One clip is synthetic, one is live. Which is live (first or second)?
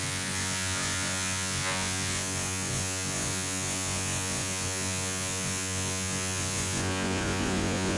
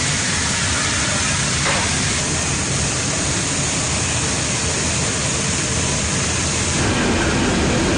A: second